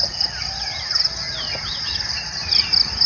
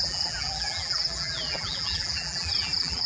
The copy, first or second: second